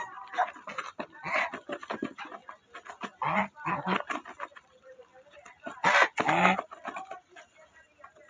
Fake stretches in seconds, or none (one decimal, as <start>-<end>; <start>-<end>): none